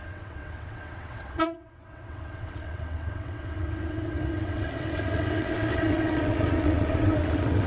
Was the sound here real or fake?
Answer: fake